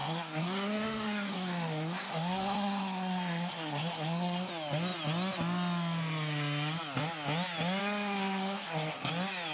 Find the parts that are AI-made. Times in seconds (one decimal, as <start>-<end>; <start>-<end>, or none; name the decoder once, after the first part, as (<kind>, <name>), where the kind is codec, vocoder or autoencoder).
0.0-4.5 (codec, SNAC); 7.8-9.1